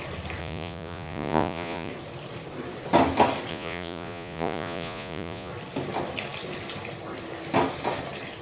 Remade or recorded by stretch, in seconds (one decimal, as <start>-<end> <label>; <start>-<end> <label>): 0.0-0.4 recorded; 0.4-1.9 remade; 1.9-3.5 recorded; 3.5-5.5 remade; 5.5-8.4 recorded